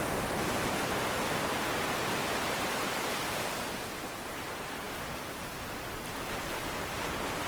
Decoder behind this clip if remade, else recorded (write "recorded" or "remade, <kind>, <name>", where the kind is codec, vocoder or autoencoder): recorded